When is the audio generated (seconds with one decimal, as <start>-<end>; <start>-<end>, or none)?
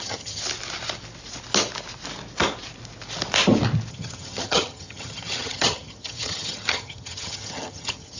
0.0-0.4; 3.9-8.2